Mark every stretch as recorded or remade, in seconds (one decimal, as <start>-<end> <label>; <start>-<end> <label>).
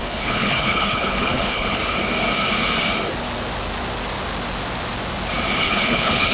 0.0-1.8 remade; 1.8-5.6 recorded; 5.6-6.3 remade